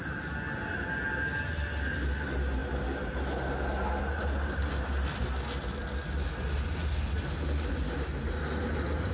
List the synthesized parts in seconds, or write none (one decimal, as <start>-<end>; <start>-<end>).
none